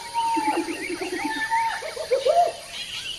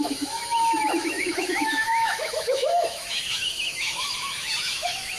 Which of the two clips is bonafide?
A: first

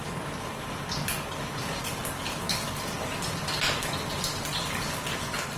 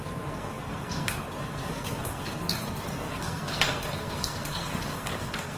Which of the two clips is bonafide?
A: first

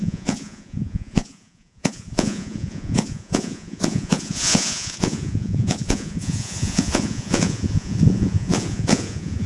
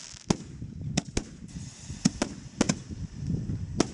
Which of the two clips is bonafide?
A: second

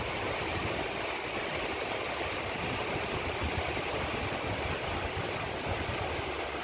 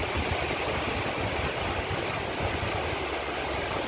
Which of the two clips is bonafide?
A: second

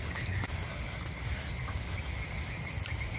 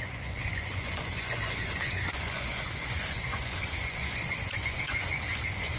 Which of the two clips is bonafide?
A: first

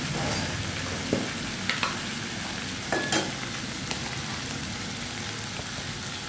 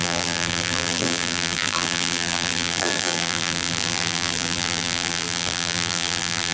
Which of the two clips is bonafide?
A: first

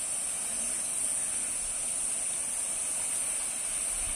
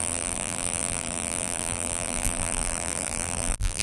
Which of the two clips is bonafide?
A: first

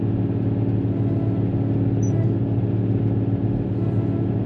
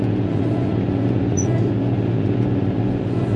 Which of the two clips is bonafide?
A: first